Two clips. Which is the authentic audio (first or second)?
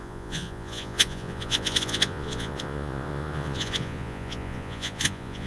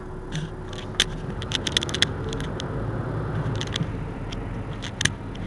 second